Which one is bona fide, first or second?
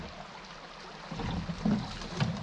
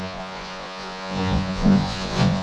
first